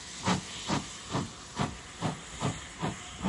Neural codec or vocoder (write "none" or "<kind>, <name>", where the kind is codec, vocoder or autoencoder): none